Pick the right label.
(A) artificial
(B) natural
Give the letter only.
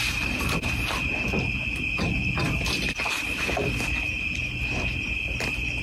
B